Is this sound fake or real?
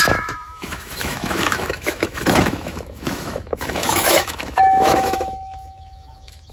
fake